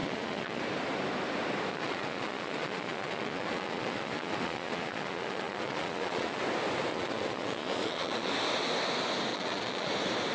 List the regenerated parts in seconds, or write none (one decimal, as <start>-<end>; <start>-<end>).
0.0-0.6; 1.7-6.4; 6.9-8.3; 9.3-9.9